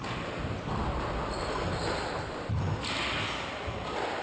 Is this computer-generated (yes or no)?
no